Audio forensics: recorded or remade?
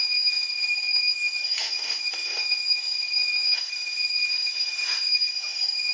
remade